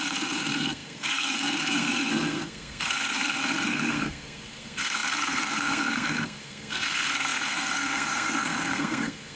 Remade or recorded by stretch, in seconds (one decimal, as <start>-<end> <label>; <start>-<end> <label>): 0.0-9.4 remade